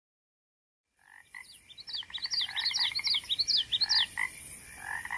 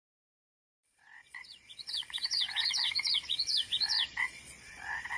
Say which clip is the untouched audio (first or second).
first